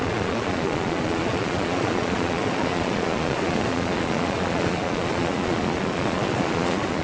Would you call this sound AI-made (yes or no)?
yes